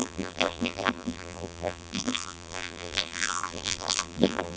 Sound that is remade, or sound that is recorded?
remade